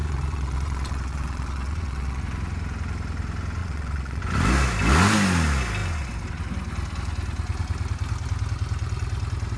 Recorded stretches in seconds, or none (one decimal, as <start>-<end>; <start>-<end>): 2.2-3.6; 4.2-9.6